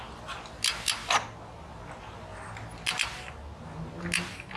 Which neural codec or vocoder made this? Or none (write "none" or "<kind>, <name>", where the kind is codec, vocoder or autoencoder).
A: none